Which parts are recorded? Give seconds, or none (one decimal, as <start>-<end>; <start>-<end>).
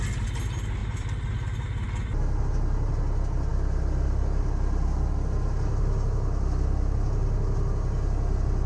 0.0-8.7